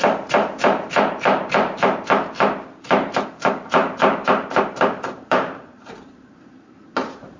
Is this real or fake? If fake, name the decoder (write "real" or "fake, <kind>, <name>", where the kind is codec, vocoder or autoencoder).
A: fake, vocoder, BigVGAN v2